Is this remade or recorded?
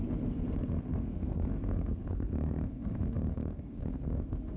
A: remade